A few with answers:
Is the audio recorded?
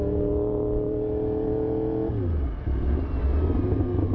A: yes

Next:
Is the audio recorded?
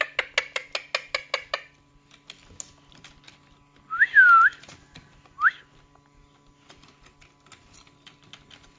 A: yes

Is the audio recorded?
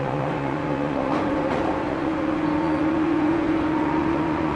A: no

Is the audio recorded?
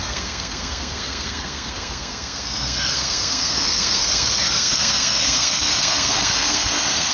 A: no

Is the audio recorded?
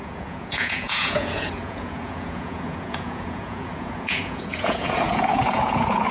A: no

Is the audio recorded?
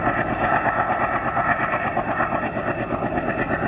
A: yes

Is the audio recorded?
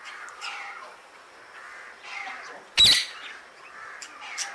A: yes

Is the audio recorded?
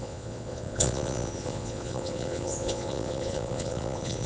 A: no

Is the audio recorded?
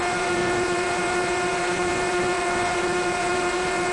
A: no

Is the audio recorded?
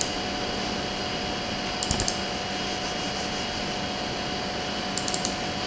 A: yes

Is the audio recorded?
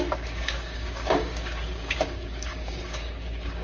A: no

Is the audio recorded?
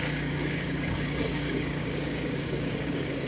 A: no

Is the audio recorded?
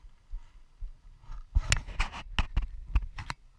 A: yes